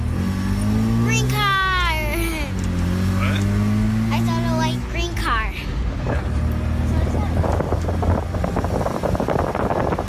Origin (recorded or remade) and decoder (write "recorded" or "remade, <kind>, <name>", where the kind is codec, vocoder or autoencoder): recorded